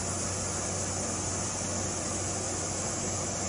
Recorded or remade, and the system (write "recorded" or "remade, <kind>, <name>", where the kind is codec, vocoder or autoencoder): recorded